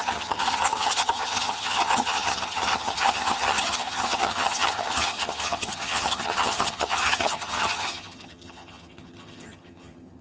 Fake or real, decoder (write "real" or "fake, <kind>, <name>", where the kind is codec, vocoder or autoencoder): fake, vocoder, HiFi-GAN